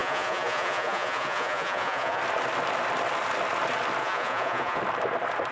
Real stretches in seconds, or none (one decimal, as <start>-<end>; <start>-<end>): 2.2-4.0; 4.8-5.5